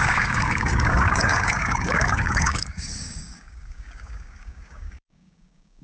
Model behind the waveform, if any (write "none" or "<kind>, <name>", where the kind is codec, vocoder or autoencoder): codec, DAC